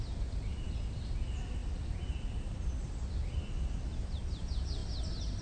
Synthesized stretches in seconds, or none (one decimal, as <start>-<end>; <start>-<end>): none

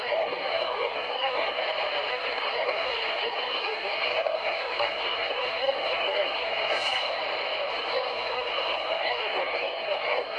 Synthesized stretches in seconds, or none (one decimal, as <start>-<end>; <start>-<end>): 0.0-1.6; 2.1-7.2; 7.7-10.4

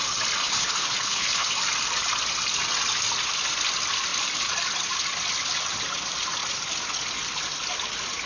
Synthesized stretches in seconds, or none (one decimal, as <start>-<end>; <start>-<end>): 0.4-1.5

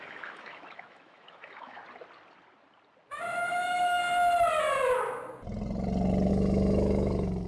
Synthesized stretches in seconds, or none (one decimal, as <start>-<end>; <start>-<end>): 0.0-1.8; 3.5-4.0; 6.3-7.5

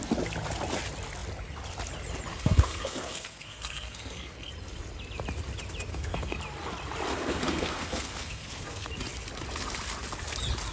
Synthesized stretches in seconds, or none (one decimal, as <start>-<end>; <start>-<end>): 2.3-4.5; 5.9-6.4; 7.1-8.9

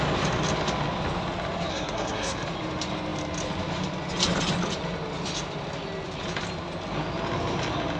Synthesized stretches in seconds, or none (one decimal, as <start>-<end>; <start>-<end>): 1.7-2.4

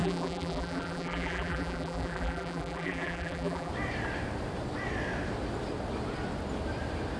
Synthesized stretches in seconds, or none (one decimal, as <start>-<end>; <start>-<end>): 0.0-3.7

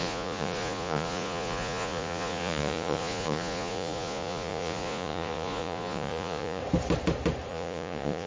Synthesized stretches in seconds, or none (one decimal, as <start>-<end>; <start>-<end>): 0.0-6.6; 7.5-8.3